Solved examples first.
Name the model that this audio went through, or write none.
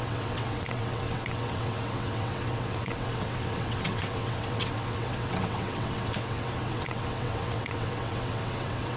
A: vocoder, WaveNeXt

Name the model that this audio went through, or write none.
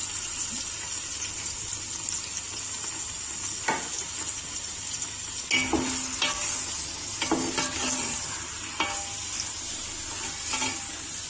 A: none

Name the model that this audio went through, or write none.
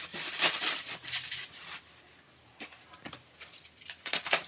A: none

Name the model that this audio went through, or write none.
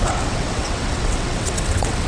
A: vocoder, WaveNeXt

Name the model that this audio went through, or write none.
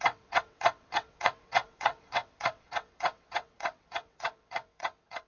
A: vocoder, WaveNeXt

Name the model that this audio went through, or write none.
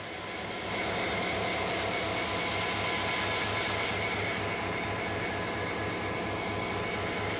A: none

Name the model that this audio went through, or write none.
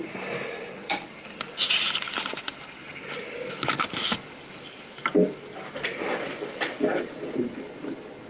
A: none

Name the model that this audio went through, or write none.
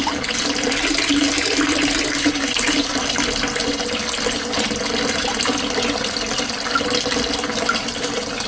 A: none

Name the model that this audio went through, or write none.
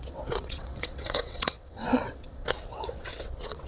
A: vocoder, WaveNeXt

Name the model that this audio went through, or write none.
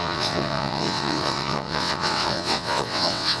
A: vocoder, WaveNeXt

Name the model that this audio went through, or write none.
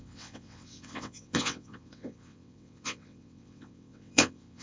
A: vocoder, WaveNeXt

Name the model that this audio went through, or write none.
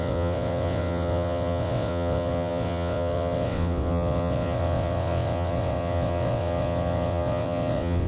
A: vocoder, WaveNeXt